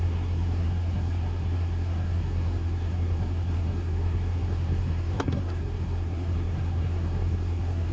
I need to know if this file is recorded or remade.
remade